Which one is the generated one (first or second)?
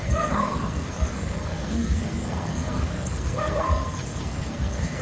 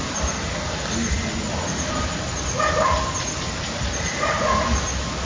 first